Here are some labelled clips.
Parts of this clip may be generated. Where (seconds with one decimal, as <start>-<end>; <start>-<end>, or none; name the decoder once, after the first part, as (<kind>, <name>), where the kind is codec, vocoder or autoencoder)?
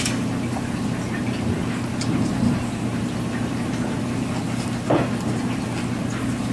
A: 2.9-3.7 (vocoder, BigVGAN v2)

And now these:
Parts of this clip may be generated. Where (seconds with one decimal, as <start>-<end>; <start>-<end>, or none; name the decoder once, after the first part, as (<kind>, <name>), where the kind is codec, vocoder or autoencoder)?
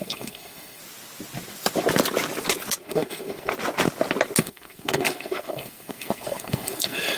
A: 0.0-0.8 (codec, SNAC); 2.8-3.5; 4.4-7.2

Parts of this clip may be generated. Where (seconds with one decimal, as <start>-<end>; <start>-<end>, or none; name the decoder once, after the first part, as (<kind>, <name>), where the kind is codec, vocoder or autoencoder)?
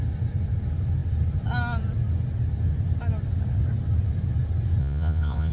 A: 4.8-5.5 (vocoder, Vocos)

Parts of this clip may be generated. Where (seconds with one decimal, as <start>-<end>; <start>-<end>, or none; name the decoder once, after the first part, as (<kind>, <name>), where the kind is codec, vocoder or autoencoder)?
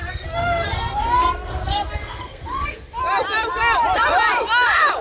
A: 0.0-3.0 (codec, SNAC)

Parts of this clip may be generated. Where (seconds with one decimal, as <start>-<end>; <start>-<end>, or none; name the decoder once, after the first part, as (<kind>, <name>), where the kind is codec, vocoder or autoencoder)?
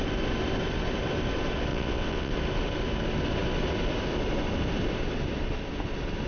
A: 1.7-2.3 (vocoder, WaveNeXt)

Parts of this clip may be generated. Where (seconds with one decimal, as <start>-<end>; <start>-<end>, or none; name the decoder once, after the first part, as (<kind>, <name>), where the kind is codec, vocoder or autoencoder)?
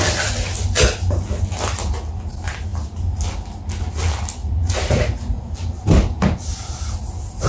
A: 4.4-5.5 (vocoder, Vocos)